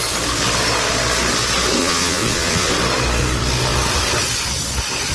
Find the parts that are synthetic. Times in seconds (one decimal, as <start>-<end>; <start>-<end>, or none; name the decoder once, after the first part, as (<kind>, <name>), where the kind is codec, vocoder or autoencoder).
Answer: 1.8-2.7 (vocoder, Vocos)